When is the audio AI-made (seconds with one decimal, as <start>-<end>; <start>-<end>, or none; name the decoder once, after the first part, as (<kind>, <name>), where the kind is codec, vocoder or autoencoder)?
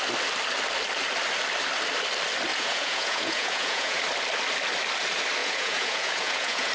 2.5-4.0 (vocoder, Vocos); 5.4-6.7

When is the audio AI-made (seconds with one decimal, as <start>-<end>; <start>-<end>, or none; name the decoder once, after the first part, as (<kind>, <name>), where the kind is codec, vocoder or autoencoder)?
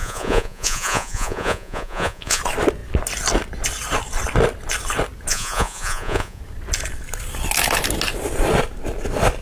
0.0-2.4 (vocoder, Vocos); 5.3-6.4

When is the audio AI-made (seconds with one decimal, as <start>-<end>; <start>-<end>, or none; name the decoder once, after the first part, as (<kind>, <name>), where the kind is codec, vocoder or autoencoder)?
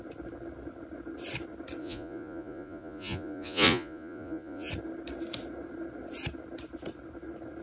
1.8-4.7 (vocoder, Vocos)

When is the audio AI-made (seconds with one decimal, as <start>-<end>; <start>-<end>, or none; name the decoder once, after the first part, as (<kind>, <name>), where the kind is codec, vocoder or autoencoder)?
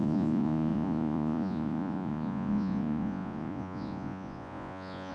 0.0-5.1 (vocoder, Vocos)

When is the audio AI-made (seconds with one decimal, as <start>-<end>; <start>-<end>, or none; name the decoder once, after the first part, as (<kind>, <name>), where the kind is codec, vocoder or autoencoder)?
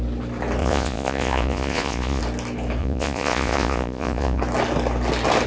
0.6-2.2 (vocoder, Vocos); 2.8-4.4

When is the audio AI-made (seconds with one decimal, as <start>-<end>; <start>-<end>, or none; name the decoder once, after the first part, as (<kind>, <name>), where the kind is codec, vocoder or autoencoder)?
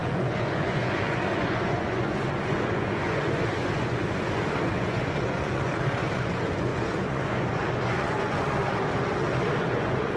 0.0-8.6 (vocoder, Vocos); 9.6-10.2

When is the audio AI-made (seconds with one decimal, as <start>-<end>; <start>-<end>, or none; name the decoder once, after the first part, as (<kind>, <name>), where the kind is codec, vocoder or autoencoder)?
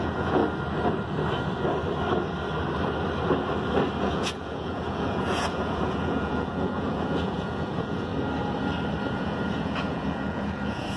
0.0-0.4 (vocoder, Vocos); 4.0-8.1; 9.1-11.0